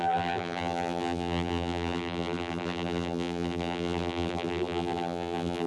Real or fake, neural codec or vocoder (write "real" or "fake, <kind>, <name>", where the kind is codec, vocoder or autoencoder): fake, vocoder, BigVGAN v2